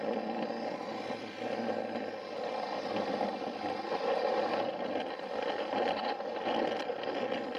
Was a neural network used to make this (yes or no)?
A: no